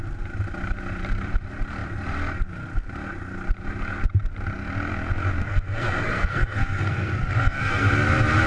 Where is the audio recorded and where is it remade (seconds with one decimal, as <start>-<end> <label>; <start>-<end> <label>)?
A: 0.0-5.4 recorded; 5.4-7.9 remade; 7.9-8.5 recorded